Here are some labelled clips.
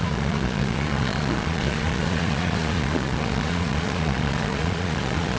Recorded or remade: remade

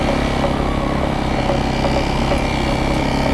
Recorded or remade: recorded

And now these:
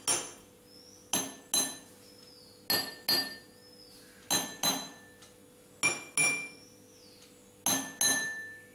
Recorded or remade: recorded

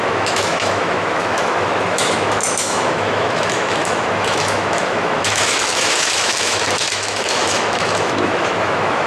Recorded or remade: remade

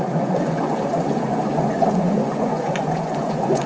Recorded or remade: remade